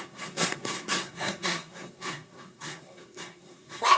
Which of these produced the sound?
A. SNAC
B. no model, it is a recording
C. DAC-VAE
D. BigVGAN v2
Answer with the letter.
A